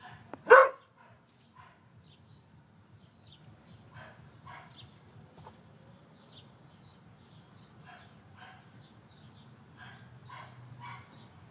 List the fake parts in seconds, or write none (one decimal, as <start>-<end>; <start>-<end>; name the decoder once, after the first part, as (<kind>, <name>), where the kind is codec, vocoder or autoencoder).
none